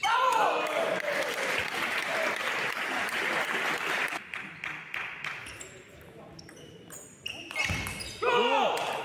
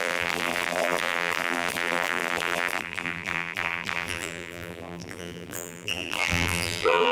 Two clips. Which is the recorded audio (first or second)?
first